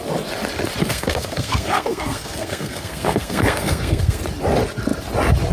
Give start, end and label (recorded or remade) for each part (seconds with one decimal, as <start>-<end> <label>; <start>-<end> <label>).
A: 0.0-0.9 recorded; 0.9-4.2 remade; 4.2-5.5 recorded